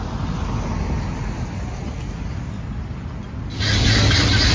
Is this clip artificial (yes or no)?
no